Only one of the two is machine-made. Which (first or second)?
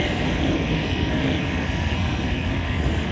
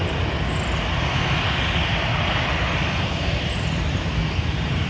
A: first